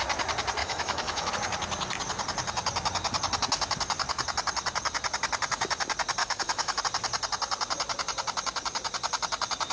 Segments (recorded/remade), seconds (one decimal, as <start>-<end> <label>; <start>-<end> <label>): 0.0-0.6 recorded; 0.6-1.3 remade; 1.3-6.2 recorded; 6.2-6.8 remade; 6.8-9.7 recorded